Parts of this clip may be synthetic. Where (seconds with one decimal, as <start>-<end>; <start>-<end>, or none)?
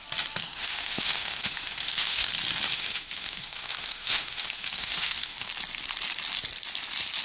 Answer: 0.4-2.3; 2.7-5.5